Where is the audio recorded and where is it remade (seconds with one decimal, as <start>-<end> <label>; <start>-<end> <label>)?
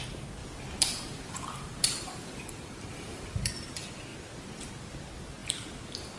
0.0-0.4 recorded; 0.4-3.5 remade; 3.5-6.2 recorded